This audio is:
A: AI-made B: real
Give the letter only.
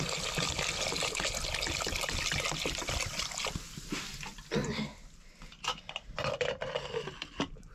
B